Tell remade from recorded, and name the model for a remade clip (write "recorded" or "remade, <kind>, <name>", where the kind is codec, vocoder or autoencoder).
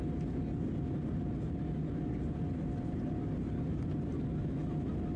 recorded